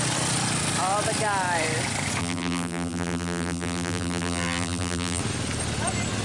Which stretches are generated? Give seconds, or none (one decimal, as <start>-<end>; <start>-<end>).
2.2-5.2